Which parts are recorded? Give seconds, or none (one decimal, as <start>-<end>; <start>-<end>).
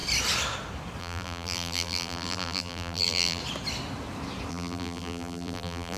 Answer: 0.0-1.0; 3.4-4.5